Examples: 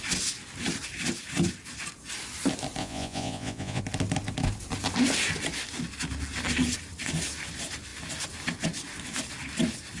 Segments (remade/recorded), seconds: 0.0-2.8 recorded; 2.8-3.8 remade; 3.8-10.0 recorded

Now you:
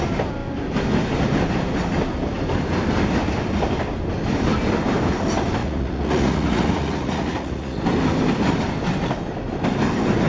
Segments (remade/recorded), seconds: 0.0-5.6 recorded; 5.6-7.8 remade; 7.8-10.3 recorded